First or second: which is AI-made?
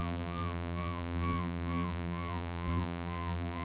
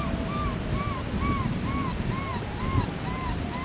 first